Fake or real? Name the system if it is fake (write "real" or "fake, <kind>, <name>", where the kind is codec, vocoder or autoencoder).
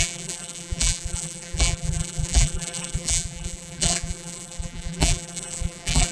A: fake, vocoder, BigVGAN v2